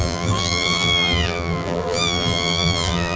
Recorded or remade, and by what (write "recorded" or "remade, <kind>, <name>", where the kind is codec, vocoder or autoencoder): remade, vocoder, BigVGAN v2